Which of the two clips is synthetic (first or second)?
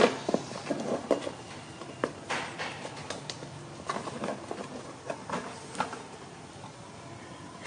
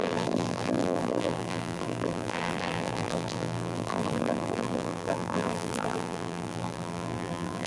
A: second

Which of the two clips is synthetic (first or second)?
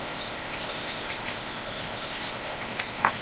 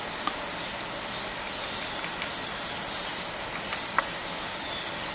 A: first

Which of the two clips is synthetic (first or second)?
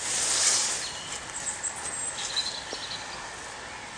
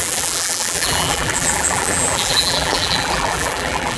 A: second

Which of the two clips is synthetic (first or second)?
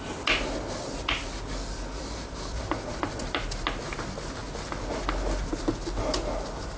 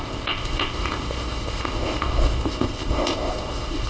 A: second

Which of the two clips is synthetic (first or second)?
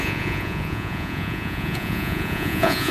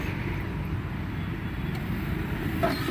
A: first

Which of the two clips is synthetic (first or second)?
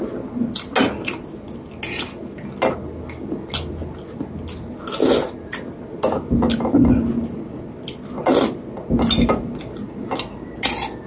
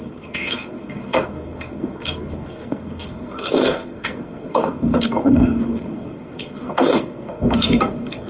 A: second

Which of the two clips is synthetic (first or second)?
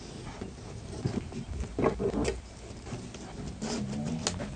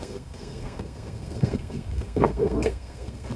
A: second